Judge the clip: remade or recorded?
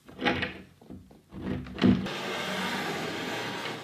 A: recorded